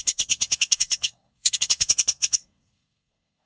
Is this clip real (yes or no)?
no